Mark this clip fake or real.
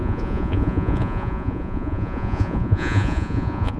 fake